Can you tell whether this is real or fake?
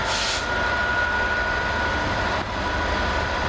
real